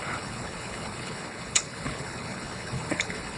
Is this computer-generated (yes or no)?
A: yes